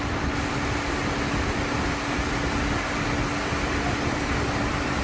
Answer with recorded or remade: recorded